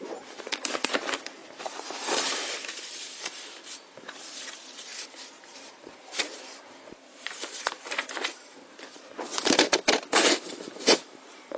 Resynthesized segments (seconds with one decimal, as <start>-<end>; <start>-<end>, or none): 0.0-11.6